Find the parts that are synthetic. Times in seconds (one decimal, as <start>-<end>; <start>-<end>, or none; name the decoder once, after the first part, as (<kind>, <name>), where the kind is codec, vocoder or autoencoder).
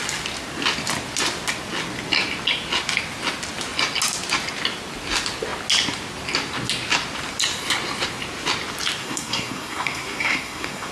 9.0-10.9 (codec, SNAC)